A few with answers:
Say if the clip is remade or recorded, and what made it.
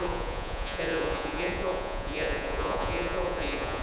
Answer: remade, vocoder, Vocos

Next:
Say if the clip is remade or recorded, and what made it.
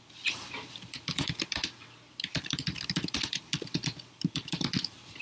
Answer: remade, vocoder, BigVGAN v2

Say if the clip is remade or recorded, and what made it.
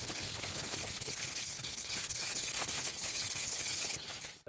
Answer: remade, codec, HILCodec